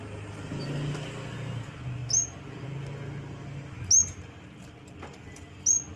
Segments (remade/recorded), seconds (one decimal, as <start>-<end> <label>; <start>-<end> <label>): 0.0-6.0 recorded